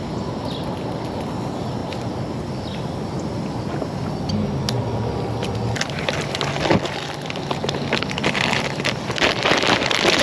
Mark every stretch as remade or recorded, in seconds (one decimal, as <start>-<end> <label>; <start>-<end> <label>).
0.0-10.2 recorded